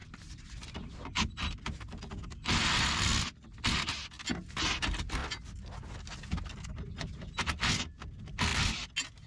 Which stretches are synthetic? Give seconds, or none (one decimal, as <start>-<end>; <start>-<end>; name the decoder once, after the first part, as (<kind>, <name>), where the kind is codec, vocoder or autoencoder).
none